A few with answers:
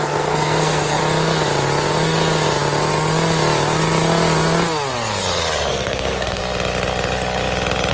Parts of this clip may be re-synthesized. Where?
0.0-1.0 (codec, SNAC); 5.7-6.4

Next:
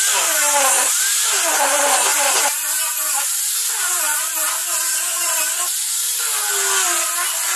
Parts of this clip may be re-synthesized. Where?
2.1-4.0 (vocoder, BigVGAN v2); 4.6-5.4

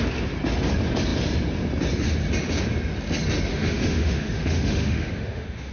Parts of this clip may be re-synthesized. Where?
3.5-5.7 (autoencoder, DAC-VAE)

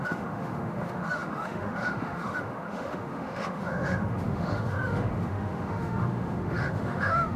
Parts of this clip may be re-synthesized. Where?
0.0-7.4 (autoencoder, DAC-VAE)

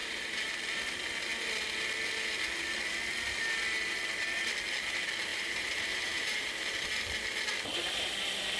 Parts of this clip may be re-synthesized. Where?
0.0-0.5 (vocoder, BigVGAN v2); 5.3-7.1

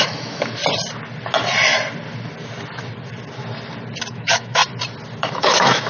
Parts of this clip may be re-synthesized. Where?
0.0-0.6 (autoencoder, DAC-VAE); 4.1-4.6; 5.2-5.9

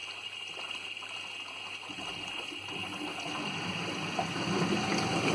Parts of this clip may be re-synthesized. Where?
none

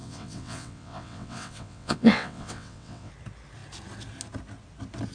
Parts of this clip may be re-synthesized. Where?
0.0-3.1 (vocoder, WaveNeXt)